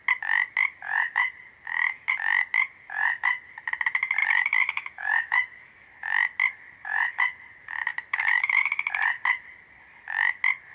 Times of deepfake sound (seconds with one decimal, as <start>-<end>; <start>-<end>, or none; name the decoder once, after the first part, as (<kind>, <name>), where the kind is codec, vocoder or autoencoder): 4.2-5.8 (autoencoder, DAC-VAE); 7.9-8.7

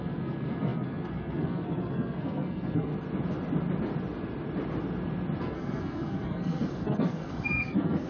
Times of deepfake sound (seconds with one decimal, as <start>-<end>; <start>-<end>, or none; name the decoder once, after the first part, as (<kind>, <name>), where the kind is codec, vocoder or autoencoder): 0.0-2.9 (codec, SNAC); 5.4-8.1

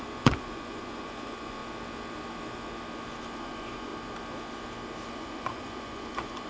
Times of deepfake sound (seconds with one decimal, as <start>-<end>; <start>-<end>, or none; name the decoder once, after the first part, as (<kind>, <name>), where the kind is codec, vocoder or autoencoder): 0.0-1.6 (vocoder, Vocos); 3.4-3.9; 5.1-6.5

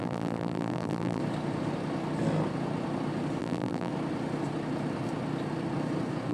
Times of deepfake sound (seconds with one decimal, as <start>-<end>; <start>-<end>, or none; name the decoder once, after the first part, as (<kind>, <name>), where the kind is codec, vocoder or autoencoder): 0.0-1.2 (vocoder, BigVGAN v2); 3.4-3.9

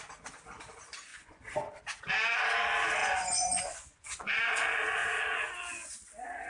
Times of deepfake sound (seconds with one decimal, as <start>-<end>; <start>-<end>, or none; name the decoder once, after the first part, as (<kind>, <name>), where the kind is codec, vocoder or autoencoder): 1.1-1.8 (vocoder, Vocos); 3.0-4.4

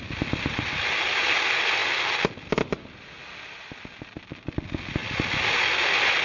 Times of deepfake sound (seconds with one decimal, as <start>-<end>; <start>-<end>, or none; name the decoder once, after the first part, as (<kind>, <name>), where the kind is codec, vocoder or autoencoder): none

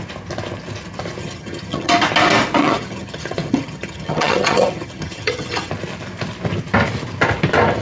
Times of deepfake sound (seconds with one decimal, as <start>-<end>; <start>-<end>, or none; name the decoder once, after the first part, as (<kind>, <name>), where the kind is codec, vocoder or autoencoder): 1.2-1.9 (vocoder, HiFi-GAN); 2.6-5.7